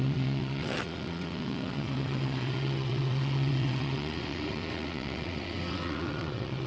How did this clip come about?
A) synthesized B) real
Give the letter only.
A